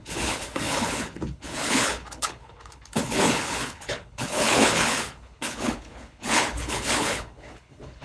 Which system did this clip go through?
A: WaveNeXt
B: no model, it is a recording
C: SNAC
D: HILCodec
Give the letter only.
D